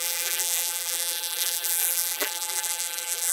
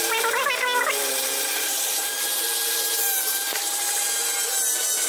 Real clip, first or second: second